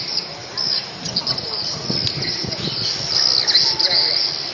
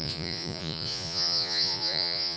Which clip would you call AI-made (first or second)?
second